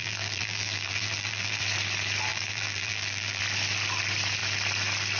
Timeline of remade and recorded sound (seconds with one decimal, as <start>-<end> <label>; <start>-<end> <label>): 0.0-1.6 remade; 1.6-2.3 recorded; 2.3-3.4 remade; 3.4-5.2 recorded